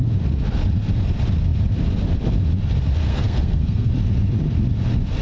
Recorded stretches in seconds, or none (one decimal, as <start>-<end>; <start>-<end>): 0.0-3.1; 3.9-5.2